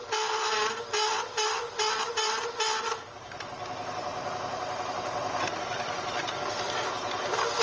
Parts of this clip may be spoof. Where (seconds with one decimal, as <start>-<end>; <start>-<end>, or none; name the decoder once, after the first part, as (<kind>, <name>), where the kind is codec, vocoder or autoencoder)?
none